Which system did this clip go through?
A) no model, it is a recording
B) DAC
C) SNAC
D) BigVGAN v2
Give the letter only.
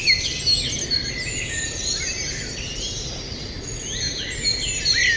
A